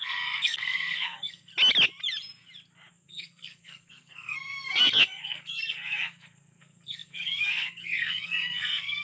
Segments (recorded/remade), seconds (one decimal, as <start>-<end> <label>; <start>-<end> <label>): 0.0-1.5 remade; 1.5-2.9 recorded; 2.9-9.0 remade